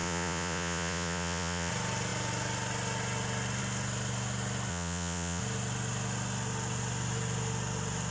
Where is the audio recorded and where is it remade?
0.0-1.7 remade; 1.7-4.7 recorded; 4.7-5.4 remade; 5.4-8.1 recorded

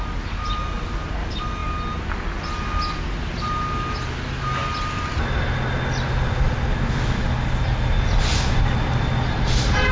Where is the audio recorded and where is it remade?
0.0-9.9 recorded

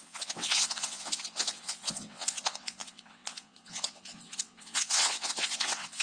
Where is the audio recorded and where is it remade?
0.0-6.0 remade

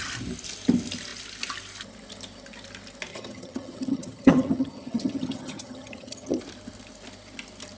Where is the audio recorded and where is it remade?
0.0-3.1 recorded; 3.1-6.4 remade; 6.4-7.8 recorded

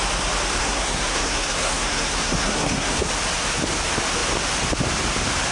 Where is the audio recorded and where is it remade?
0.0-0.6 recorded; 0.6-3.1 remade; 3.1-5.5 recorded

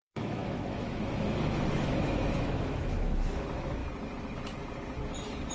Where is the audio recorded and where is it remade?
0.0-3.8 remade; 3.8-5.5 recorded

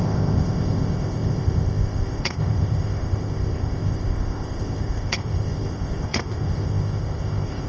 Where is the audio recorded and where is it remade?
0.0-7.7 remade

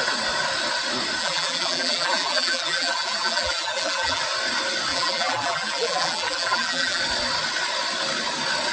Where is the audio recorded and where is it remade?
0.0-1.2 recorded; 1.2-4.2 remade; 4.2-4.9 recorded; 4.9-7.0 remade; 7.0-8.7 recorded